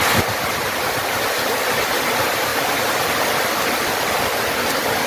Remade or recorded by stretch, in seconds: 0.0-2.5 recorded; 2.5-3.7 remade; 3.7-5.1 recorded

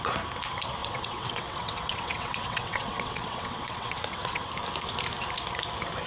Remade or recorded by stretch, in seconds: 0.0-0.8 recorded; 0.8-4.5 remade; 4.5-6.1 recorded

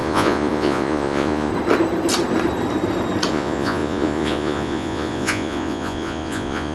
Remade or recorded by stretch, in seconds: 0.0-1.5 remade; 1.5-3.3 recorded; 3.3-6.7 remade